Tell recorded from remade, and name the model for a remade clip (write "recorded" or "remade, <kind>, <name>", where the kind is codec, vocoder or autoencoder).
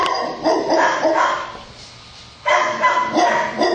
recorded